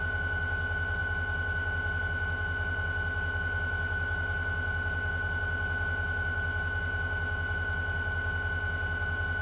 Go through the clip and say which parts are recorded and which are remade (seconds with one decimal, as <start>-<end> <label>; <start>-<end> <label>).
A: 0.0-9.4 recorded